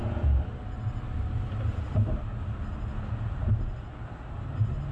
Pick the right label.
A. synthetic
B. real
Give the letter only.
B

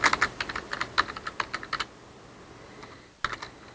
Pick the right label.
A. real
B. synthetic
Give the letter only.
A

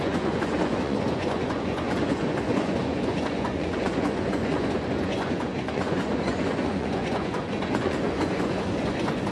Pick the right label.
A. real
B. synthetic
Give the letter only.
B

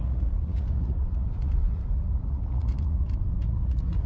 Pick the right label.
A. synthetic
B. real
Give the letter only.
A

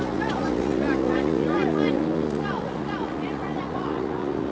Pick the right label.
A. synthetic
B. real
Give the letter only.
A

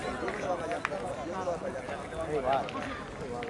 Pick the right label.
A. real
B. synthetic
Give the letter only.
A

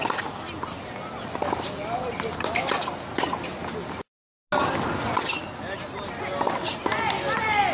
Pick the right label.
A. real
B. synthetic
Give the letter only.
A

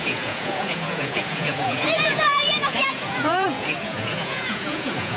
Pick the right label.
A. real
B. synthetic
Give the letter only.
B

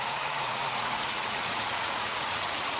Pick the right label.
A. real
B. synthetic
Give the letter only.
B